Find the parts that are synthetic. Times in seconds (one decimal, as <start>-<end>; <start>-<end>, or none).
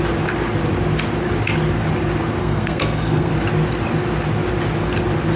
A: 2.4-3.3